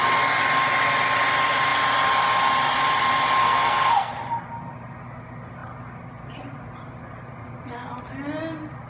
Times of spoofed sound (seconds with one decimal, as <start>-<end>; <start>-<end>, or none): 3.4-4.1